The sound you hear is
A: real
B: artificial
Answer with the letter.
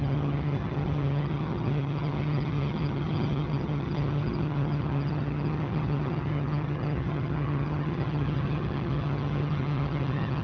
B